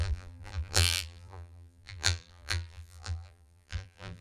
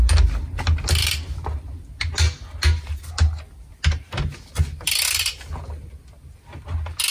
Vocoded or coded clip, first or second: first